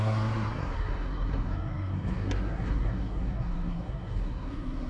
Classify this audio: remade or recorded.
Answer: remade